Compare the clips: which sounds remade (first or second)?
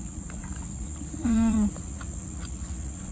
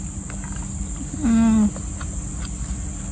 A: first